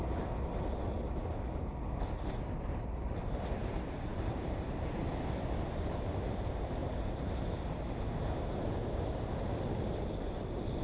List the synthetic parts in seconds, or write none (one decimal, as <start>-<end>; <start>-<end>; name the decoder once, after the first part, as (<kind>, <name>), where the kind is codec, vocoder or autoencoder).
4.1-4.8 (vocoder, BigVGAN v2); 6.8-8.0